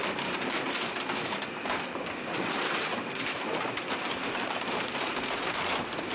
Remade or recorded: remade